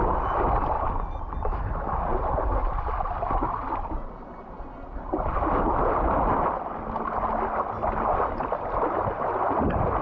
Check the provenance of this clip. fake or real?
real